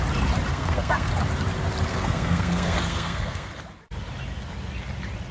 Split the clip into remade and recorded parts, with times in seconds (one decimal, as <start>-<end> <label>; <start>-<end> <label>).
0.0-0.5 recorded; 0.5-1.1 remade; 1.1-1.9 recorded; 1.9-3.5 remade; 3.5-5.3 recorded